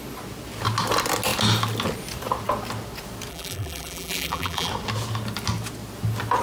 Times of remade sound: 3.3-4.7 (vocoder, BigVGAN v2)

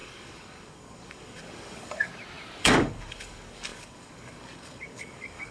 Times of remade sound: 0.0-2.1 (codec, DAC); 2.6-5.5